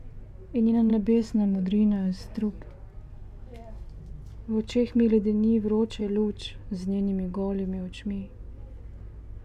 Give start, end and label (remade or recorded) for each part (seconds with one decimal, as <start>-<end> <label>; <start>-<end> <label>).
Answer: 0.0-0.9 recorded; 0.9-2.6 remade; 2.6-3.1 recorded; 3.1-4.0 remade; 4.0-6.0 recorded; 6.0-6.7 remade; 6.7-9.4 recorded